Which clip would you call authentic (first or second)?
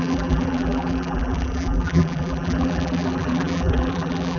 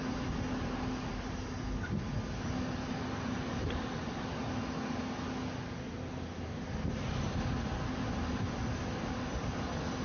second